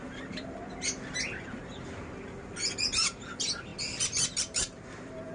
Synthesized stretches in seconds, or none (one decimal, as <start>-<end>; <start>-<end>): 0.0-0.6; 2.3-3.7; 4.4-5.3

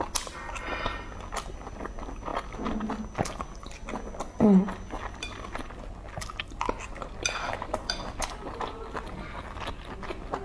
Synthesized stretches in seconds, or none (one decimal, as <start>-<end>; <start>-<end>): none

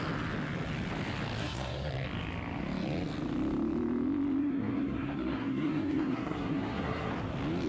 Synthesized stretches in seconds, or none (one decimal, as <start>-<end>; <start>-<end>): 1.4-1.9; 4.4-7.1

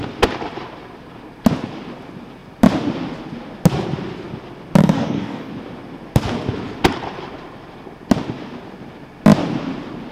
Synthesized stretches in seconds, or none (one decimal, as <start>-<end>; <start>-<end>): 4.8-5.5

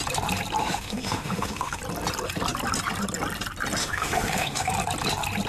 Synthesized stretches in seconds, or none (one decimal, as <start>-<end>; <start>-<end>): 0.6-1.8; 3.8-4.7

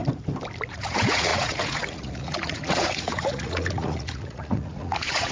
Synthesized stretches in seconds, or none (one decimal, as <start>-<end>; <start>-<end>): 0.7-5.3

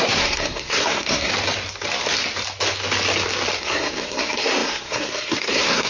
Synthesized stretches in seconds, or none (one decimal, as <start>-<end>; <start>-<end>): 0.0-1.3; 3.6-5.9